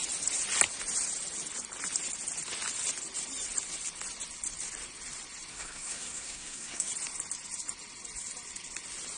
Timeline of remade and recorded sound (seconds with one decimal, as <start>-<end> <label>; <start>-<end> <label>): 0.0-5.5 recorded; 5.5-6.9 remade; 6.9-9.2 recorded